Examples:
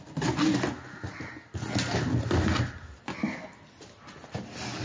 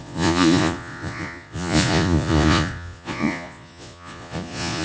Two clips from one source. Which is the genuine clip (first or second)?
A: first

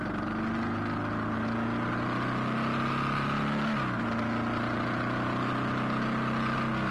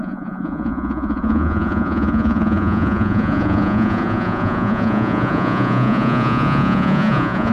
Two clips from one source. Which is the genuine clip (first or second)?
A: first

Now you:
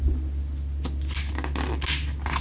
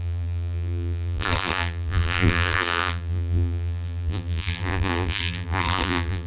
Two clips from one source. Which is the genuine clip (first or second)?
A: first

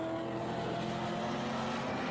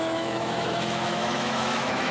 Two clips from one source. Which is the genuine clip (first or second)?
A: first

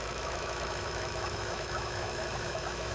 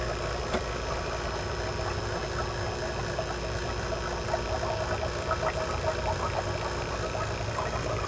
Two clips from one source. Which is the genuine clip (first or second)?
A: second